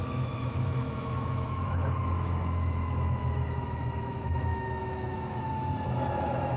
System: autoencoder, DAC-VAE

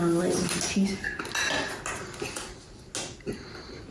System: none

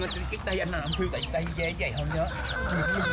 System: none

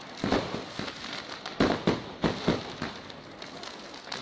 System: none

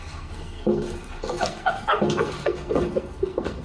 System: codec, SNAC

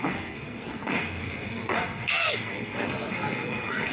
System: codec, SNAC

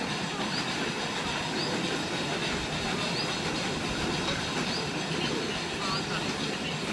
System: none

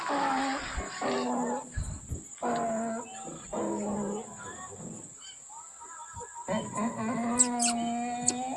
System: none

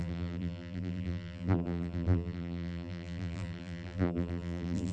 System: vocoder, BigVGAN v2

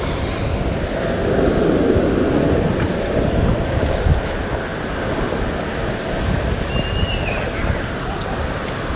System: none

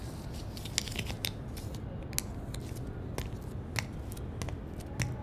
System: none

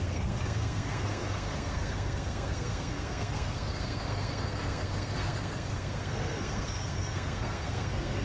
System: codec, SNAC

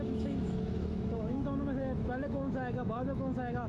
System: autoencoder, DAC-VAE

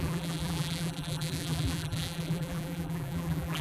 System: vocoder, BigVGAN v2